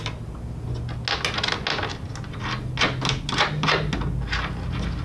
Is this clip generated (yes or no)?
no